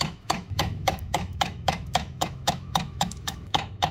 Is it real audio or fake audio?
fake